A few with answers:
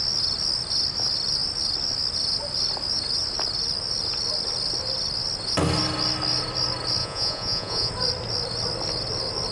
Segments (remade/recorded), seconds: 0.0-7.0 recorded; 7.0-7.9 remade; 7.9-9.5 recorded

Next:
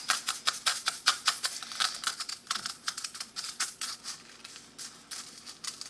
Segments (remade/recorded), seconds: 0.0-0.7 recorded; 0.7-1.5 remade; 1.5-2.1 recorded; 2.1-4.0 remade; 4.0-5.9 recorded

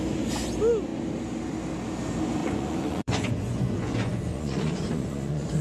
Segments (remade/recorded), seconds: 0.0-2.4 recorded; 2.4-5.6 remade

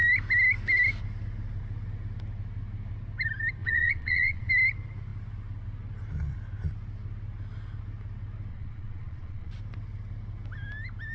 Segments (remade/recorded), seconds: 0.0-3.6 recorded; 3.6-4.5 remade; 4.5-8.5 recorded; 8.5-9.5 remade; 9.5-11.1 recorded

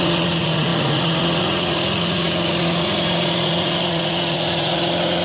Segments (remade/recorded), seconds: 0.0-5.2 remade